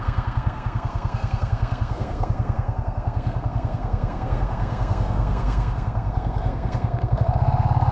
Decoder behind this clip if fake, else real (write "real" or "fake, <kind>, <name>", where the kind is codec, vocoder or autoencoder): fake, codec, SNAC